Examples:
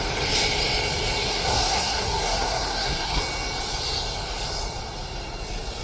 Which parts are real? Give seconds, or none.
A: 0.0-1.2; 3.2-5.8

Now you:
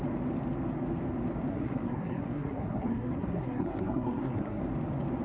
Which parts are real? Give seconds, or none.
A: 0.0-1.5; 4.6-5.2

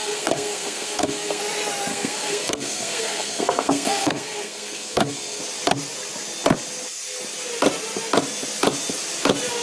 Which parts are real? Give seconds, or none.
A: 1.4-1.9; 5.4-9.6

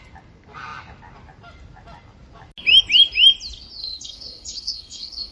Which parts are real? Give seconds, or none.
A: 0.0-3.8